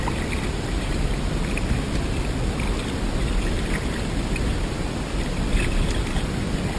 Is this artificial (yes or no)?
no